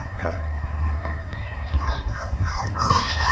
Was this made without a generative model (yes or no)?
no